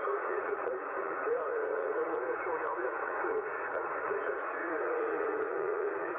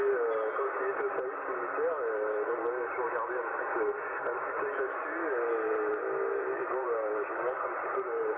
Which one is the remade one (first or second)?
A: first